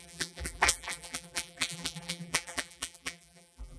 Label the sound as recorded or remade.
remade